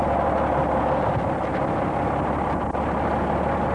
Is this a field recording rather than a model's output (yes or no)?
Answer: yes